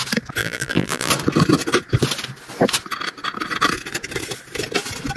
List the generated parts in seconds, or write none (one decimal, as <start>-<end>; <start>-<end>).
0.4-1.1